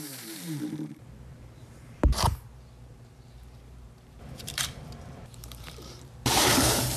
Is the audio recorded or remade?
remade